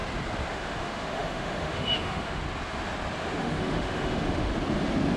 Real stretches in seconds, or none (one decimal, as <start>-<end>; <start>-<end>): 0.0-0.5; 2.4-3.4; 4.5-5.2